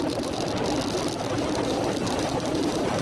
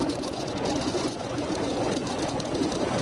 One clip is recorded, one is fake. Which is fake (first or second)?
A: second